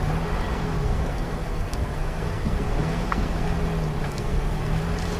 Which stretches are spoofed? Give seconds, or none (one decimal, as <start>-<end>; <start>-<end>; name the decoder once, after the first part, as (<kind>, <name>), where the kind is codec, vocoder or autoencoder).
0.5-3.6 (codec, SNAC); 4.0-4.8